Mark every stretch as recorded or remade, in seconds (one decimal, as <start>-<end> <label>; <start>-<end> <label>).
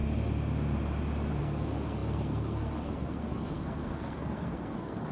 0.0-1.4 recorded; 1.4-5.1 remade